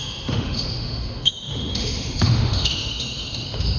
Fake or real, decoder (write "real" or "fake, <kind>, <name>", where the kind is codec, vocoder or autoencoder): fake, autoencoder, DAC-VAE